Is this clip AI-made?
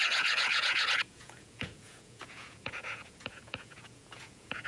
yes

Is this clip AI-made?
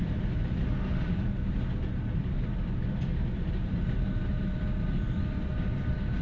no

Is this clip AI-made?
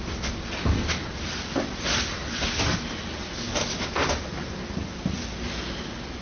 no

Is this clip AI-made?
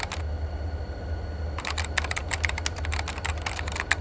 no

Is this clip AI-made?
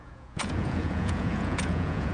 yes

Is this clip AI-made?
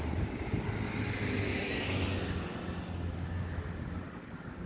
no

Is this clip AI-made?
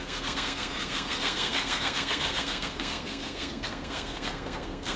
yes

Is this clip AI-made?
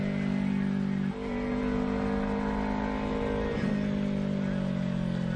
no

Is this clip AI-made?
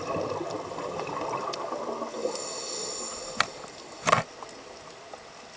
no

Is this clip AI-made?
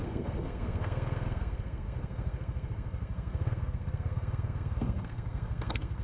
yes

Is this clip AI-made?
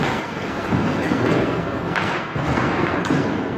yes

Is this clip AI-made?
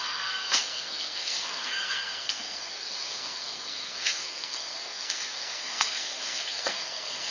yes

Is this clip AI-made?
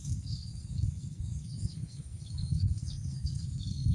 yes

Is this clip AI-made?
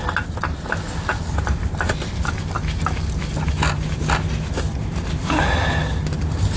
no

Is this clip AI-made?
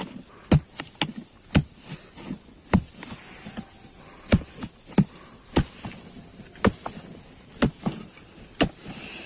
no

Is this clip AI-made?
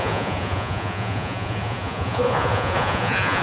yes